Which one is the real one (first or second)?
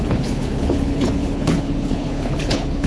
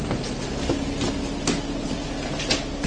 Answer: second